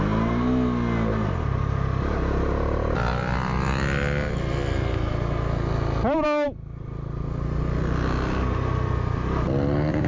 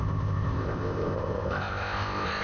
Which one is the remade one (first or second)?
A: second